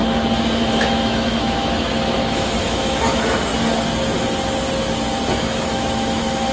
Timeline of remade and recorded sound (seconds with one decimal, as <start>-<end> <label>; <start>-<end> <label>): 0.0-0.6 recorded; 0.6-3.5 remade; 3.5-5.3 recorded; 5.3-6.5 remade

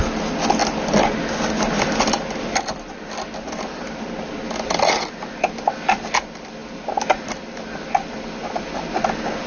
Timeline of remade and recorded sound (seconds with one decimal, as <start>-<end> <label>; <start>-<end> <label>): 0.0-9.5 recorded

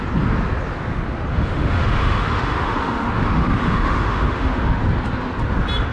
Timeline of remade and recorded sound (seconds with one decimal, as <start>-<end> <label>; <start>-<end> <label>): 0.0-1.3 recorded; 1.3-4.8 remade; 4.8-5.9 recorded

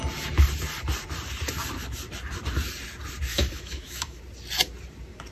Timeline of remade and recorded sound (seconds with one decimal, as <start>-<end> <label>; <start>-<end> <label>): 0.0-3.3 recorded; 3.3-4.2 remade; 4.2-5.3 recorded